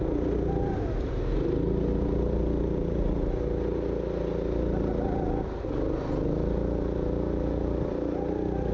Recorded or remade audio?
recorded